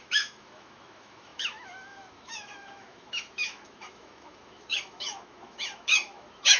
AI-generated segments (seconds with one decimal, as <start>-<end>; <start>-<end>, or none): 0.0-6.6

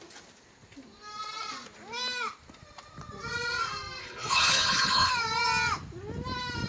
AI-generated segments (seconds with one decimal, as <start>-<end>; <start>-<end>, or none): 4.0-5.1

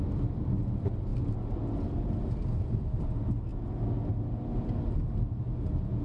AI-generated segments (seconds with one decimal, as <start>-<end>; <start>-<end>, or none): none